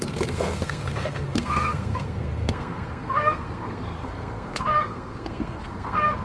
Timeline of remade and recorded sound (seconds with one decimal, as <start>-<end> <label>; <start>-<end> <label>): 0.0-6.2 remade